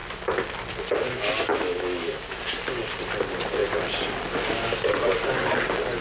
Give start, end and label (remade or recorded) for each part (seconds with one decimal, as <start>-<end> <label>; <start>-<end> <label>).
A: 0.0-1.5 recorded; 1.5-2.4 remade; 2.4-6.0 recorded